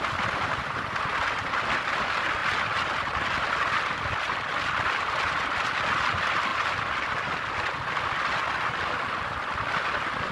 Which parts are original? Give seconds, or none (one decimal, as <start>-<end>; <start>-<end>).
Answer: 0.0-10.3